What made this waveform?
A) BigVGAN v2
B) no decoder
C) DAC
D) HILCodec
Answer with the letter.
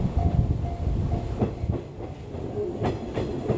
B